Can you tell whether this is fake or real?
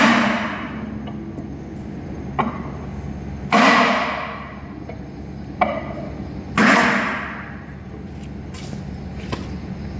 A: real